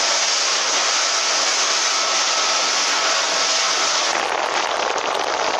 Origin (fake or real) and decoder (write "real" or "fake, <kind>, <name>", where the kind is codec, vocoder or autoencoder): real